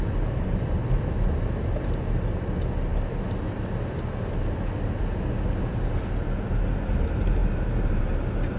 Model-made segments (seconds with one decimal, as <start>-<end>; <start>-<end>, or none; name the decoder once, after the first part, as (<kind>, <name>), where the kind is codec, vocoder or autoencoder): none